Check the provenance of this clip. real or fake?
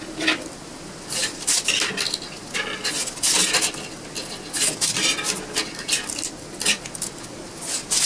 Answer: real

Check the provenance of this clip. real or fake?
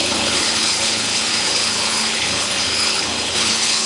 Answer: fake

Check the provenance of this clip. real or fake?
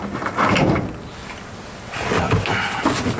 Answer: real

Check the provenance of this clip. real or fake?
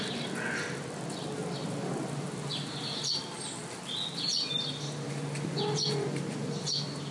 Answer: real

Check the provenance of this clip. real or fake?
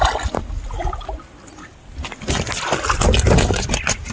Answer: real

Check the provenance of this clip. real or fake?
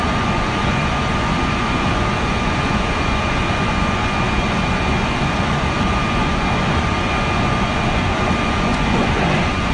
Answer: fake